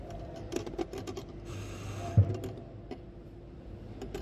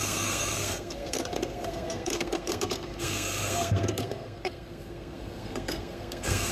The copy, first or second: second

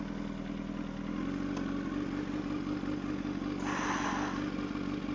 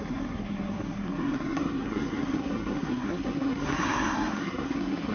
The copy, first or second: second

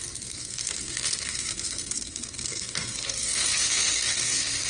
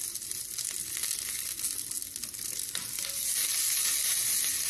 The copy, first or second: first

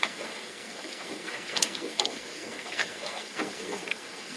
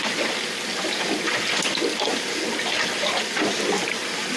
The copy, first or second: first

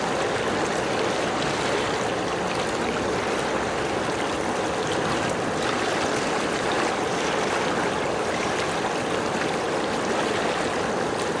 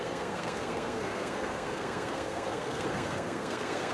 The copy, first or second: second